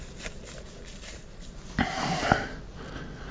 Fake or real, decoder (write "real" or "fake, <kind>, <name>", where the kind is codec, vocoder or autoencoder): real